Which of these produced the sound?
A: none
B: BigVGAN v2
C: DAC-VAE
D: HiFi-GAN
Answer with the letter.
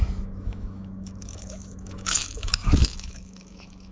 C